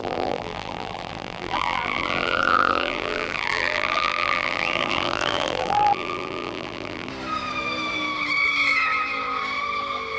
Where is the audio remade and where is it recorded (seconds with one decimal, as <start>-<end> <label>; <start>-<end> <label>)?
0.0-7.1 remade; 7.1-10.2 recorded